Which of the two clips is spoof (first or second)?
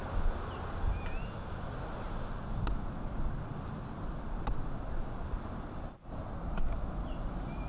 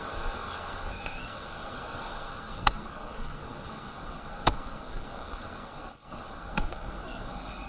second